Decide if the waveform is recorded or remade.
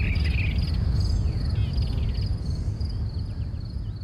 recorded